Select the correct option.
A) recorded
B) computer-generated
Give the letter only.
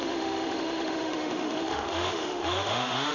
B